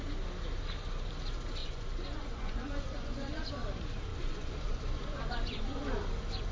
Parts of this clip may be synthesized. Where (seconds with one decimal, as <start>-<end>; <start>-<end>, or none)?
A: 1.6-3.5; 4.1-5.8